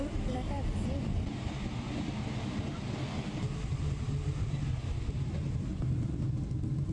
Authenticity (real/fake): real